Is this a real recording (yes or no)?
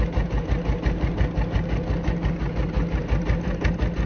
yes